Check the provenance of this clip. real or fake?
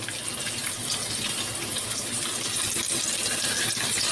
fake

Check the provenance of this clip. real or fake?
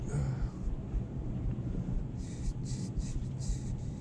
real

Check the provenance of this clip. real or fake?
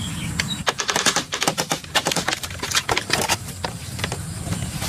fake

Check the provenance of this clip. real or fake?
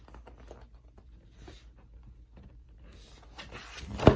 real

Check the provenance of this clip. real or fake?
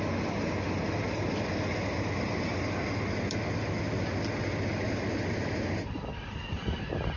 real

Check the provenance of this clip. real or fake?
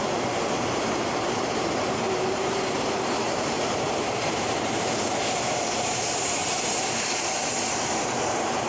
fake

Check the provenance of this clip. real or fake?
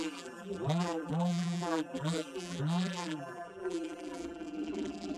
fake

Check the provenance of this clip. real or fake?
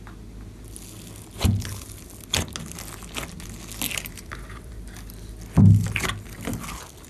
real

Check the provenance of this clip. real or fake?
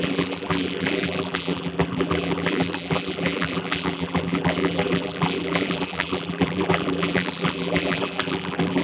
fake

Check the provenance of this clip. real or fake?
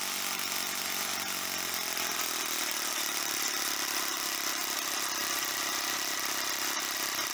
fake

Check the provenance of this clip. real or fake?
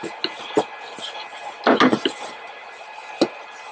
real